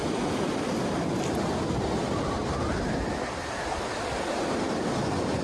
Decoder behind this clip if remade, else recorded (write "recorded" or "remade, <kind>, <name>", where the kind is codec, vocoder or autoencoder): recorded